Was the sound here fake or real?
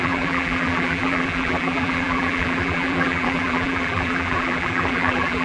fake